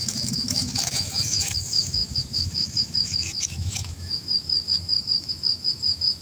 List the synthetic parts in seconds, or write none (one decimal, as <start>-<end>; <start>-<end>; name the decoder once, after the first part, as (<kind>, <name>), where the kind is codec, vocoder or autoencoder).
0.0-6.2 (autoencoder, DAC-VAE)